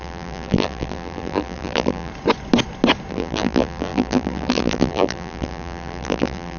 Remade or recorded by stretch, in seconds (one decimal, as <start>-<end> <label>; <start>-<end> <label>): 0.0-2.1 remade; 2.1-3.1 recorded; 3.1-6.6 remade